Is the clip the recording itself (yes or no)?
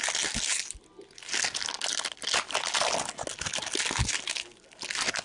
yes